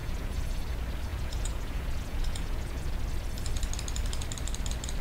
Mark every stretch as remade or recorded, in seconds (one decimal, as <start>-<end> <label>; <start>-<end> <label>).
0.0-0.6 remade; 0.6-1.1 recorded; 1.1-3.0 remade; 3.0-5.0 recorded